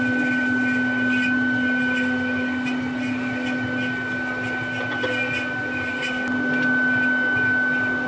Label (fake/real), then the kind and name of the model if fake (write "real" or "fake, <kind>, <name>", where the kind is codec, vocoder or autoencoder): real